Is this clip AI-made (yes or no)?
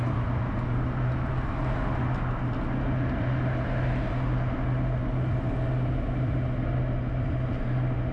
no